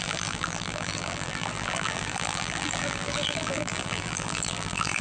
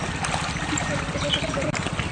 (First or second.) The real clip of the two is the second